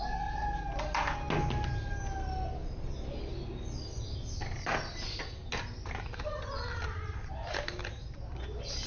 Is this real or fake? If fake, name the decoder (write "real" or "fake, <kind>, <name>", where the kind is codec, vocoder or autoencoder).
real